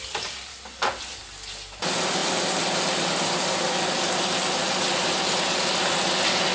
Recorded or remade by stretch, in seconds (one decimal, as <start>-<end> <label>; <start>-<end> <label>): 0.0-6.5 recorded